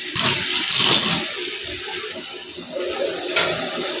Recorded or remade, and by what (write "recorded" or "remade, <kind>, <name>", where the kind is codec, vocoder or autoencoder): recorded